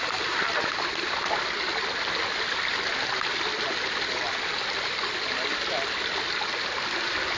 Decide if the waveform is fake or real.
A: real